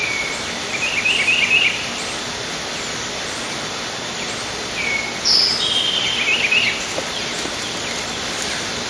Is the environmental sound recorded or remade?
recorded